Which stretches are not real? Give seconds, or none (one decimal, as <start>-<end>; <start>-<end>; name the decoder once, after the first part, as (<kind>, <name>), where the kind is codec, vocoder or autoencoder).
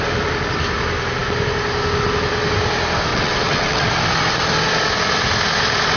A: 3.1-3.9 (vocoder, WaveNeXt)